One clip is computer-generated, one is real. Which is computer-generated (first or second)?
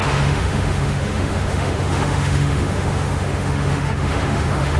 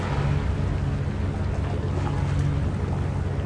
first